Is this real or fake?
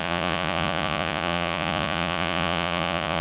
fake